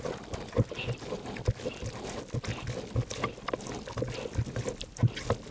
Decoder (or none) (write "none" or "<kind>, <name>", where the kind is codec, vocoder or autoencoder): none